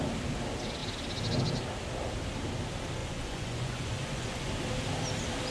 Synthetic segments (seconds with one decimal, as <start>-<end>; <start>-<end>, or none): 3.0-4.5